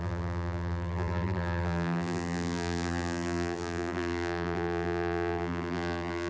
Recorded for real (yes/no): no